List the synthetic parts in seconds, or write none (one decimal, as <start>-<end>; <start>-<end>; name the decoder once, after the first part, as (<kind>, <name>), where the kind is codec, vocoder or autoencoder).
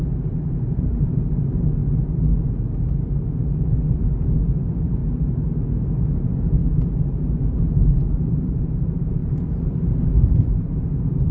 0.0-1.8 (vocoder, BigVGAN v2); 4.5-5.0; 5.8-11.3